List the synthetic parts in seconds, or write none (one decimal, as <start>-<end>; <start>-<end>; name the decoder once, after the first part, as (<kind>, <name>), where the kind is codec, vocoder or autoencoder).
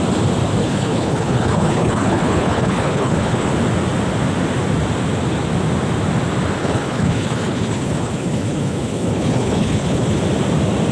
0.6-3.5 (codec, HILCodec); 6.6-10.2